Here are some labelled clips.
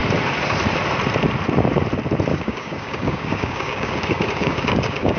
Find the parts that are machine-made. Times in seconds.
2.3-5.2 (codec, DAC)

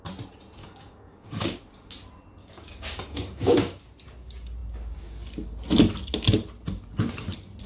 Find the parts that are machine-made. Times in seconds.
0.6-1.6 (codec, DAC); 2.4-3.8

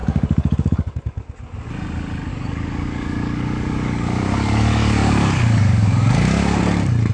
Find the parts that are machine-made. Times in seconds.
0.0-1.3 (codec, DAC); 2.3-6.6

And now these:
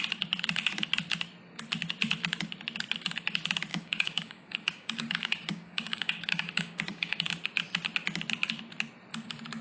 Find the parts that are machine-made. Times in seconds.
3.7-7.3 (codec, DAC)

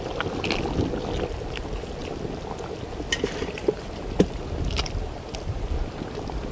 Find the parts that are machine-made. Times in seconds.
none

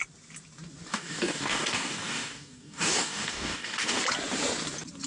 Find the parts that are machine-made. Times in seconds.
0.9-4.0 (codec, DAC)